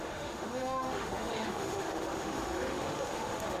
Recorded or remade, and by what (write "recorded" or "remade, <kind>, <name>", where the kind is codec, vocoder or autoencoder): remade, autoencoder, DAC-VAE